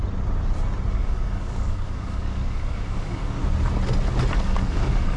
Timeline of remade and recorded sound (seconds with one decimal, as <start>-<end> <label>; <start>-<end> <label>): 0.0-0.9 recorded; 0.9-3.4 remade; 3.4-4.4 recorded; 4.4-5.2 remade